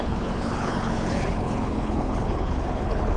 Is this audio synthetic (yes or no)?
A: yes